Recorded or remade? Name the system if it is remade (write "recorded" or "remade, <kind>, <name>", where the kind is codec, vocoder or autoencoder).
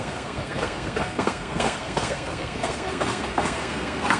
remade, codec, SNAC